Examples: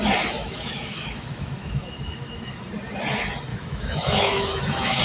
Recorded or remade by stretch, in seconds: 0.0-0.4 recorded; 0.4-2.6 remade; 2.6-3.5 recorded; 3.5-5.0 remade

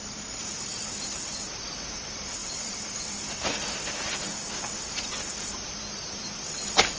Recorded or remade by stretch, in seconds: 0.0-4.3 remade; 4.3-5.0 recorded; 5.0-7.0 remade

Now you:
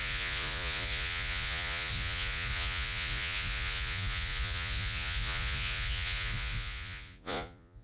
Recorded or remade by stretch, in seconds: 0.0-7.8 remade

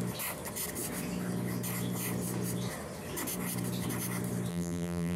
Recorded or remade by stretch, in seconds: 0.0-4.5 recorded; 4.5-5.2 remade

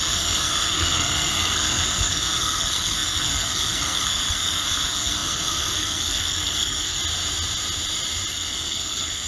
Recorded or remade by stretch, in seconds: 0.0-7.0 remade; 7.0-8.3 recorded; 8.3-9.3 remade